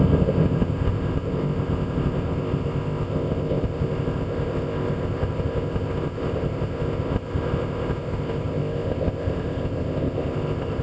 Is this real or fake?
fake